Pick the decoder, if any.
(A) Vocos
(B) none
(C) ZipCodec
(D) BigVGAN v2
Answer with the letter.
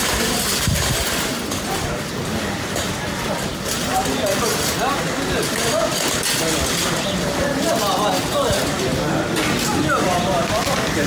B